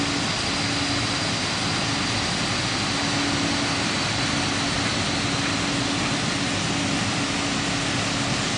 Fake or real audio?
real